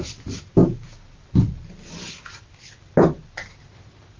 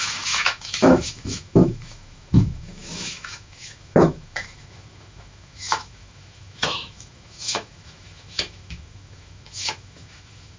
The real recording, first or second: first